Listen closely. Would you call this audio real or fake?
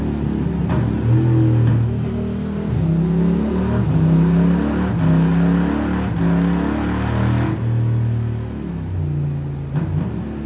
real